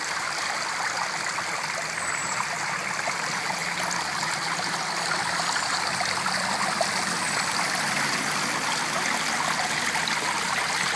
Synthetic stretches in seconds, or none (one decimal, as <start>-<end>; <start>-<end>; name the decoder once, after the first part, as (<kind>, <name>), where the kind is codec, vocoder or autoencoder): none